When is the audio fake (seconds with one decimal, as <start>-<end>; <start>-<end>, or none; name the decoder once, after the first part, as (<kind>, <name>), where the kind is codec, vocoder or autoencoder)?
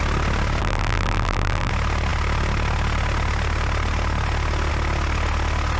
0.6-1.7 (vocoder, BigVGAN v2)